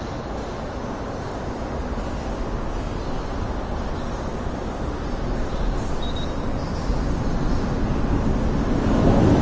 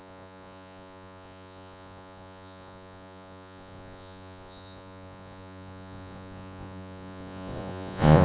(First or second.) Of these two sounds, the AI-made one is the second